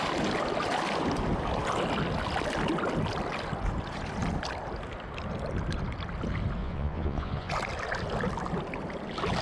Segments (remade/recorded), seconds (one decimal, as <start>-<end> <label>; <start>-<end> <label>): 0.0-6.6 recorded; 6.6-7.5 remade; 7.5-9.4 recorded